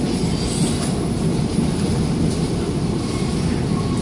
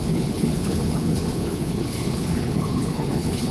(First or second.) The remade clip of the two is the second